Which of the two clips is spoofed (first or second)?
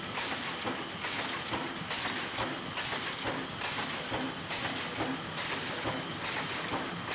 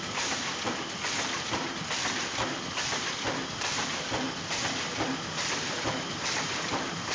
second